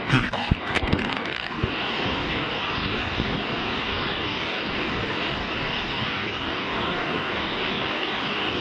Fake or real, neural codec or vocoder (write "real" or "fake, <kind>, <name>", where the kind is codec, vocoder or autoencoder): fake, codec, DAC